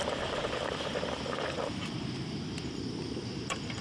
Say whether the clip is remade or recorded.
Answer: remade